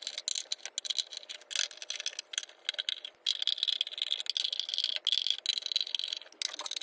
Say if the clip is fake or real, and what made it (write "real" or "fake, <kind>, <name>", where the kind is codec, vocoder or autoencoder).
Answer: real